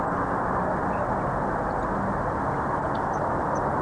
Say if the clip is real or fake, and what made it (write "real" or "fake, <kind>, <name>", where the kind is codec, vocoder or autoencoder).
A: real